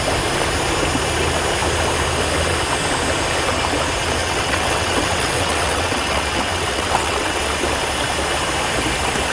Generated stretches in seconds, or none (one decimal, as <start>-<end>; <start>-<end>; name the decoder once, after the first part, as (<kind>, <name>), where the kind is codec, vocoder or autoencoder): 4.2-7.4 (vocoder, WaveNeXt)